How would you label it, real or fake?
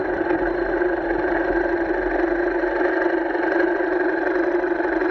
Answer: real